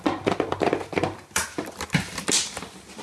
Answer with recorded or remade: remade